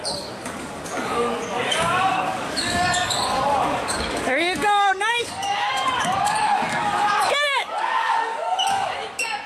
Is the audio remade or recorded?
remade